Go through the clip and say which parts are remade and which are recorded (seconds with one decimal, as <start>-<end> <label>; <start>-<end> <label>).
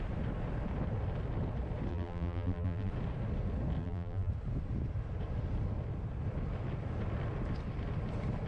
0.0-1.9 recorded; 1.9-2.9 remade; 2.9-3.8 recorded; 3.8-4.3 remade; 4.3-8.5 recorded